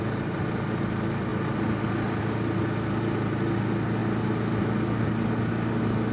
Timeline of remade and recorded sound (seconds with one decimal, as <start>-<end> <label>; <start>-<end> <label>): 0.0-6.1 recorded